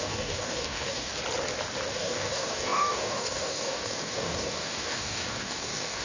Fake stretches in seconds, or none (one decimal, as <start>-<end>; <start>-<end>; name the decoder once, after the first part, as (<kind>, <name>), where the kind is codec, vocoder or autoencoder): 0.0-1.1 (codec, DAC); 1.9-6.0